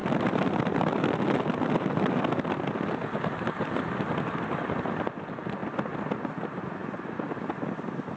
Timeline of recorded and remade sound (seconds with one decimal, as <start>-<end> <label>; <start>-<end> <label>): 0.0-2.2 remade; 2.2-5.6 recorded; 5.6-6.3 remade; 6.3-8.2 recorded